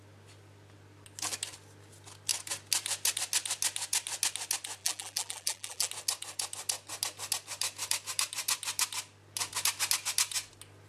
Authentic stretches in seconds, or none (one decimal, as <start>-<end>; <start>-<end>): 0.0-4.8; 5.9-10.9